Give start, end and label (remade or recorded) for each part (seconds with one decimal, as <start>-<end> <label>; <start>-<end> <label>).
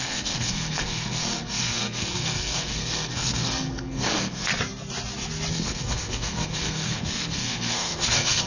0.0-4.5 remade; 4.5-5.5 recorded; 5.5-8.5 remade